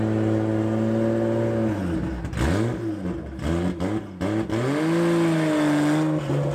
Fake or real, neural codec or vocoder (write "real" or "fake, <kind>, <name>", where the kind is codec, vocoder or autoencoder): real